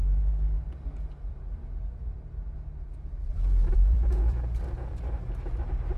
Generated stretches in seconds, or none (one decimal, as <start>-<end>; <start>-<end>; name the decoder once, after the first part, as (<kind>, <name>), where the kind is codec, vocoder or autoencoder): 3.3-4.7 (vocoder, BigVGAN v2)